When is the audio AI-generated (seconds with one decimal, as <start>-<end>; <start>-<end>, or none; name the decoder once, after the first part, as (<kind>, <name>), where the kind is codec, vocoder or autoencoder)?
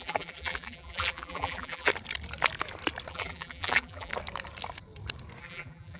0.0-1.9 (vocoder, BigVGAN v2); 3.1-4.1; 5.4-6.0